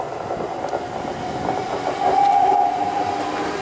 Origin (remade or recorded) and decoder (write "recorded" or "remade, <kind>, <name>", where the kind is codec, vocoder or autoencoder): recorded